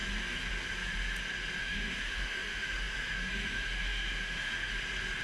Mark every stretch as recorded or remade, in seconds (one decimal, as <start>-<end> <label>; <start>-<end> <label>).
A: 0.0-1.6 recorded; 1.6-4.7 remade; 4.7-5.2 recorded